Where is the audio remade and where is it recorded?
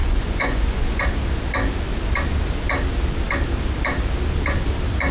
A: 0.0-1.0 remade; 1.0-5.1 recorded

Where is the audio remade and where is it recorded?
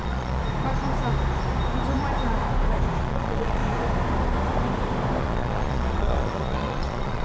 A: 0.0-0.4 remade; 0.4-3.0 recorded; 3.0-3.6 remade; 3.6-5.2 recorded; 5.2-7.2 remade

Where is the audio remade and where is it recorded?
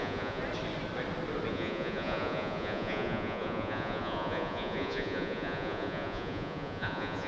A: 0.0-0.4 remade; 0.4-1.5 recorded; 1.5-7.3 remade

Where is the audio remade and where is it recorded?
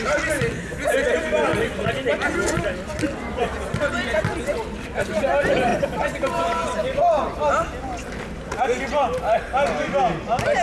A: 0.0-10.6 recorded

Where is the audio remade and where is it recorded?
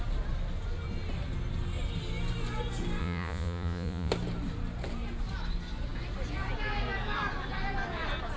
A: 0.0-3.0 recorded; 3.0-4.1 remade; 4.1-8.4 recorded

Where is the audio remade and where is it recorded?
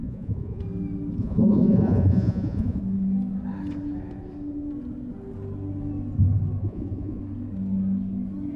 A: 0.0-0.6 remade; 0.6-1.2 recorded; 1.2-2.8 remade; 2.8-6.6 recorded; 6.6-7.2 remade; 7.2-8.6 recorded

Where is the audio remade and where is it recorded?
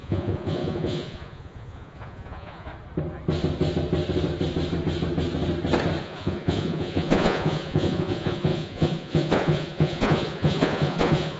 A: 0.0-2.7 remade; 2.7-6.0 recorded; 6.0-11.4 remade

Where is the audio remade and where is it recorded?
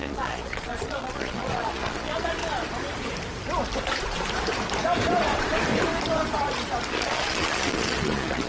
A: 0.0-2.4 remade; 2.4-6.9 recorded; 6.9-8.5 remade